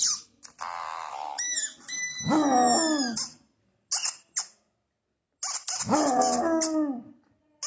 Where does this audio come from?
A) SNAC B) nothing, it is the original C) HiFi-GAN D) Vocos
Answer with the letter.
B